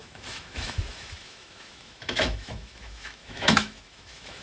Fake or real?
fake